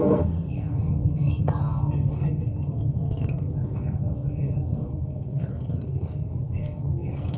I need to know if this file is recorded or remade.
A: remade